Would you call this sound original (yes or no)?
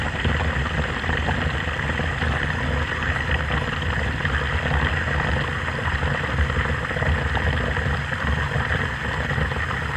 yes